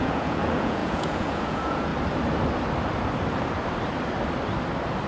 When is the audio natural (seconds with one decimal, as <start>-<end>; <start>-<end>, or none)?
1.9-5.1